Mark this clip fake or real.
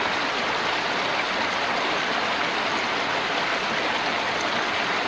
real